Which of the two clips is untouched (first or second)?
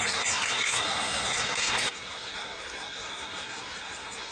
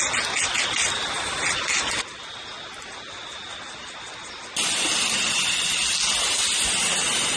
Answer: second